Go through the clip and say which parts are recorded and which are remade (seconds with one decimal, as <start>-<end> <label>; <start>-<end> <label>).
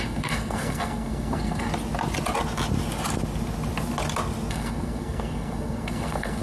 0.0-1.7 remade; 1.7-4.5 recorded; 4.5-6.4 remade